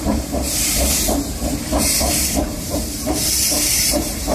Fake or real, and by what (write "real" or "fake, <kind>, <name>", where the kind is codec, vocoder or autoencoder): fake, vocoder, BigVGAN v2